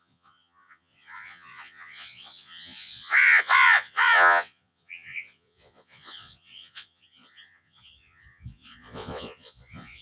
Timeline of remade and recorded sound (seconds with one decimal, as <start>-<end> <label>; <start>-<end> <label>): 0.0-10.0 remade